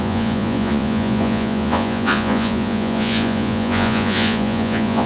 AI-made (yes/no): yes